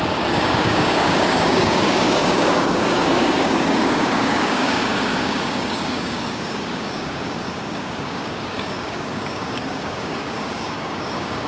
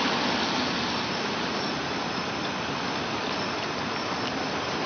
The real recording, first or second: second